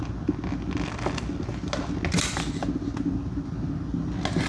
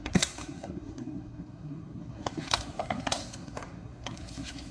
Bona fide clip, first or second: first